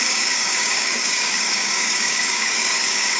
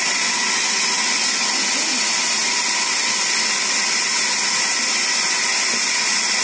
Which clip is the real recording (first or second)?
second